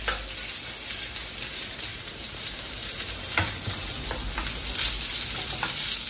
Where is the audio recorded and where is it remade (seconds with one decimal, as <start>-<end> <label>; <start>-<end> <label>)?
0.0-1.9 recorded; 1.9-3.8 remade; 3.8-6.1 recorded